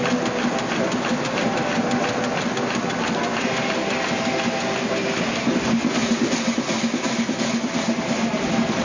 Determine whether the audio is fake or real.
real